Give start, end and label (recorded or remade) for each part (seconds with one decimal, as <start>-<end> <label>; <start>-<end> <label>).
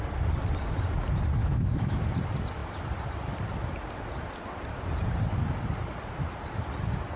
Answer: 0.0-1.4 recorded; 1.4-2.1 remade; 2.1-7.2 recorded